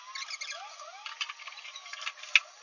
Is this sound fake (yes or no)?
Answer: no